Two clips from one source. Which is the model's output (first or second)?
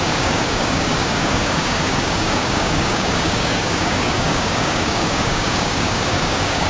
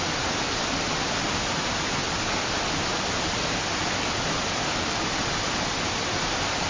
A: first